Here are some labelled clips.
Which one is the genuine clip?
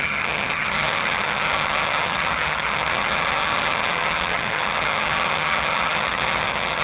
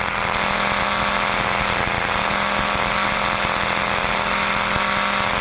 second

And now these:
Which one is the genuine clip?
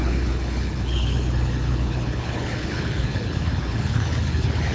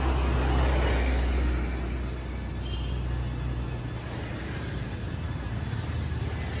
second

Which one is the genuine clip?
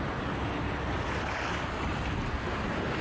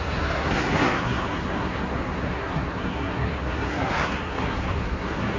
first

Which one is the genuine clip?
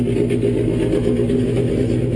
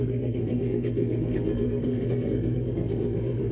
first